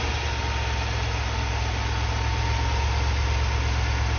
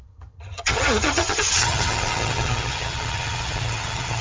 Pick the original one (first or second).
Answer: first